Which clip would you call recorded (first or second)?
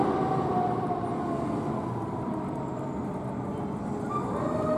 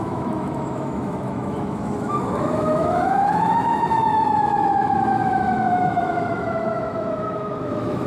first